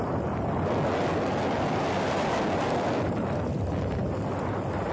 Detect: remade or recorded recorded